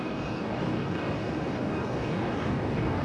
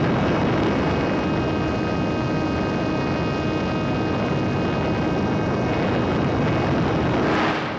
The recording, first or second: second